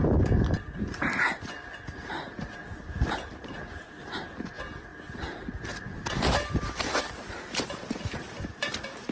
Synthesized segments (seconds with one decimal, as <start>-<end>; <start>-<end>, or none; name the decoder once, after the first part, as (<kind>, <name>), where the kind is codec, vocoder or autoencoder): none